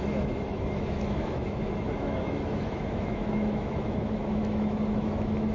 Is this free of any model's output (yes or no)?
no